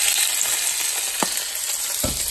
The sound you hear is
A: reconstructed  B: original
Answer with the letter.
B